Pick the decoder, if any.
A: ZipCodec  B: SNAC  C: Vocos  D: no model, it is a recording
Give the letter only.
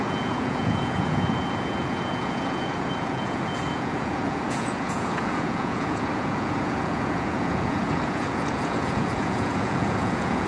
C